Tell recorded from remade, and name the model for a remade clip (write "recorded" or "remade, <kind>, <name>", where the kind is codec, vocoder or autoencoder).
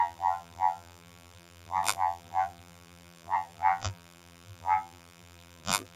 remade, vocoder, BigVGAN v2